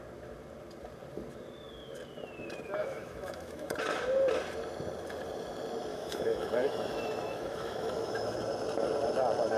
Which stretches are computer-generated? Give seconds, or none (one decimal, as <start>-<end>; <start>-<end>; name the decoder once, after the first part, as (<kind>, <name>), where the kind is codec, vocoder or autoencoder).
2.8-3.7 (autoencoder, DAC-VAE); 5.9-8.4